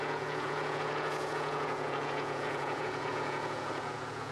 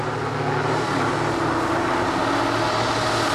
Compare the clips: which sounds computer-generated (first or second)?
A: first